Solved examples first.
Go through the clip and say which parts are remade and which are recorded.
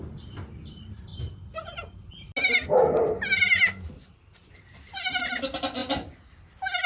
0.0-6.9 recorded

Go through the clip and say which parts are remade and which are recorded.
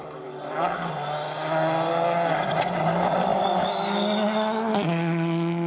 0.0-5.7 recorded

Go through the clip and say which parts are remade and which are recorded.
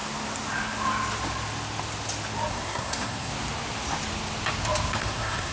0.0-2.5 recorded; 2.5-3.3 remade; 3.3-5.0 recorded; 5.0-5.5 remade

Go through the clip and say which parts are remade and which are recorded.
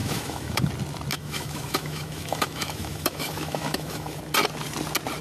0.0-0.7 remade; 0.7-1.1 recorded; 1.1-4.2 remade; 4.2-5.2 recorded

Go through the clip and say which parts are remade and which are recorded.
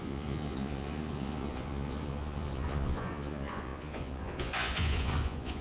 0.0-5.6 remade